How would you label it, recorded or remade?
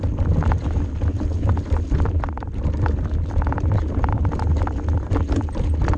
recorded